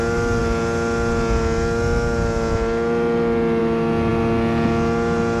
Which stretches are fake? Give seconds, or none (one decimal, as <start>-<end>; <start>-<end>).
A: none